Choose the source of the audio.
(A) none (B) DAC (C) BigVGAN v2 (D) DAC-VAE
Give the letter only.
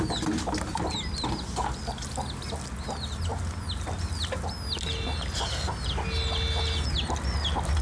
A